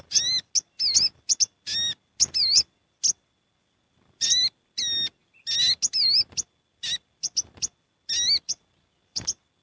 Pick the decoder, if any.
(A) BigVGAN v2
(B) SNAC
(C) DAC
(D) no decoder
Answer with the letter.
D